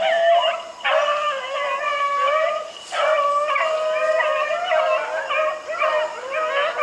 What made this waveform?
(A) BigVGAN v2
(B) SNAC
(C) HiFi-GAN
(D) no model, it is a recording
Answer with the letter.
D